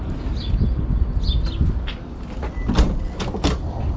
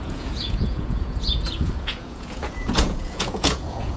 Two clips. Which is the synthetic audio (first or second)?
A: second